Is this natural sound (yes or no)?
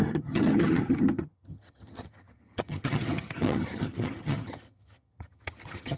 no